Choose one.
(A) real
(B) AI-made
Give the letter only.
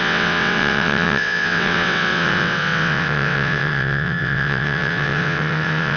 B